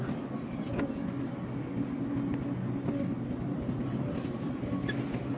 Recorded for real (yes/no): yes